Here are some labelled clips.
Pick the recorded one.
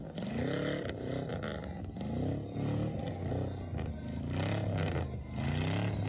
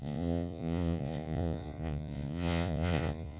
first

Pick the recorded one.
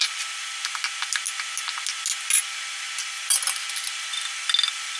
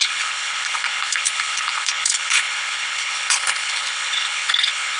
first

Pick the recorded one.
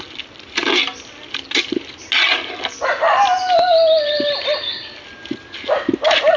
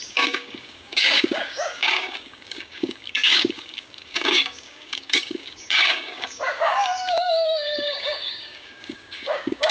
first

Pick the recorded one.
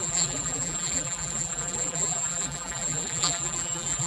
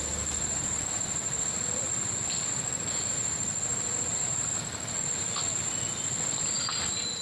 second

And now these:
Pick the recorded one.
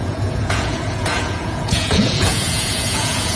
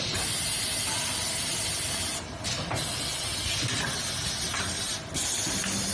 second